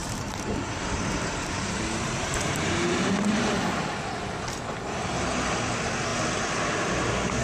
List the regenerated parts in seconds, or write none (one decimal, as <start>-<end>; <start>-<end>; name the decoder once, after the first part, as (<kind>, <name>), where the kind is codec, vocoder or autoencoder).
0.0-3.1 (vocoder, BigVGAN v2)